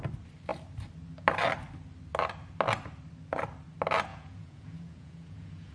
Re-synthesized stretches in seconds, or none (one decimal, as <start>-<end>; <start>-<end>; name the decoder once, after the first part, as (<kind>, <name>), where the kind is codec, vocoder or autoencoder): 4.1-5.7 (vocoder, Vocos)